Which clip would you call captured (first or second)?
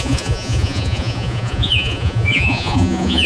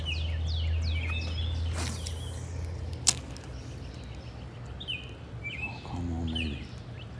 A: second